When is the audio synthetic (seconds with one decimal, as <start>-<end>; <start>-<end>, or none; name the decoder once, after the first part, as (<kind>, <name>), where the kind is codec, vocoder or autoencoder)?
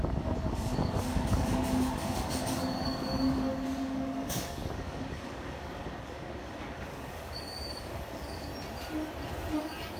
0.0-8.5 (codec, DAC); 9.6-10.0